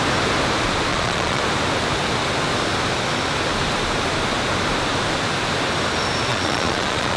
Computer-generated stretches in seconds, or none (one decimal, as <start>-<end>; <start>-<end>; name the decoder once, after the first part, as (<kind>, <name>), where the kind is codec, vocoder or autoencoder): 0.9-1.4 (vocoder, Vocos); 6.3-7.2